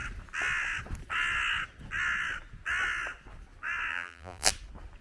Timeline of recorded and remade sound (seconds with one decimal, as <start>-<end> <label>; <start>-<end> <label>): 0.0-3.9 recorded; 3.9-4.5 remade; 4.5-5.0 recorded